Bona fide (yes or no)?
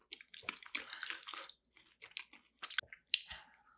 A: yes